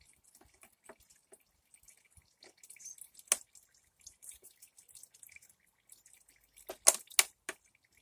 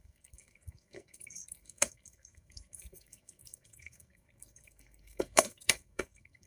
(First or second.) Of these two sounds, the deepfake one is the second